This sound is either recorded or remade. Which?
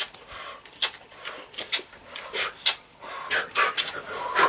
recorded